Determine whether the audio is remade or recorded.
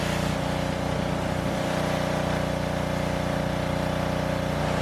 recorded